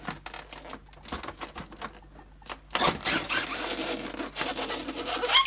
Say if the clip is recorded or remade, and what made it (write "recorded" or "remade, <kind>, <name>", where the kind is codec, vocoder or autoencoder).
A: recorded